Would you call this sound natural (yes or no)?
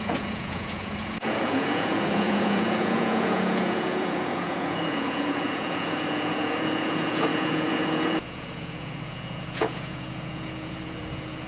no